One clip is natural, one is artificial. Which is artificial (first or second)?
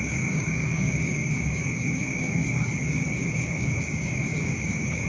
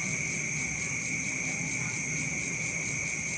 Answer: first